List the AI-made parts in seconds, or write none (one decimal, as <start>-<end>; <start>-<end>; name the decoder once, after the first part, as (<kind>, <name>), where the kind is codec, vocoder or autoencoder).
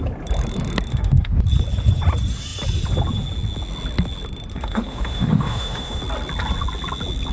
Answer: 0.9-1.4 (autoencoder, DAC-VAE); 4.5-6.0